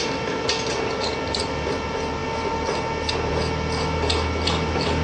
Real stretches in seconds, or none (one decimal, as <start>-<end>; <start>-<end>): 0.0-5.0